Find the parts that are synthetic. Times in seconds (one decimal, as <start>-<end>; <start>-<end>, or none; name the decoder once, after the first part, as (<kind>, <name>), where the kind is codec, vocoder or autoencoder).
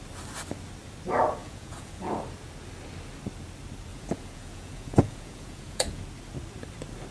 1.4-2.2 (vocoder, Vocos); 3.9-6.0